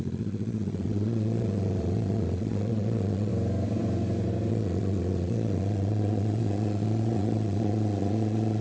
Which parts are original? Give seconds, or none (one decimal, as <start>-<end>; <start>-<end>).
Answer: 3.3-4.5